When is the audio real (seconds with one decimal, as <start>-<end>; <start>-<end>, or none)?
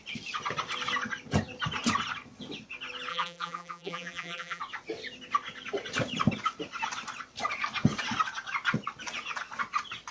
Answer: 0.0-3.1; 4.6-10.1